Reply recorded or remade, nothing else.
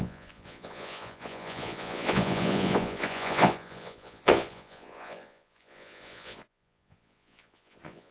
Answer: remade